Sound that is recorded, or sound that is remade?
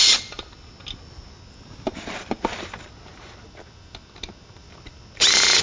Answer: recorded